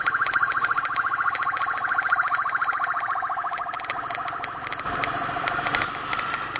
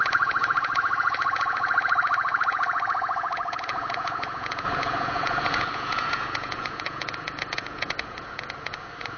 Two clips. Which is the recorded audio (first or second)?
first